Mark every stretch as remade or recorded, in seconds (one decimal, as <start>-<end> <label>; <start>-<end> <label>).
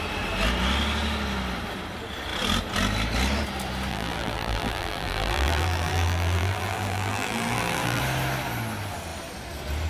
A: 0.0-3.9 recorded; 3.9-8.0 remade; 8.0-9.9 recorded